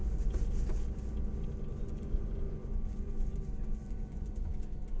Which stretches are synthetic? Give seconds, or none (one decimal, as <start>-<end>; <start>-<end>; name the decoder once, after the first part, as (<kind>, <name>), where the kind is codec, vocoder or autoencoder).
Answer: 1.7-3.4 (vocoder, Vocos); 3.8-4.5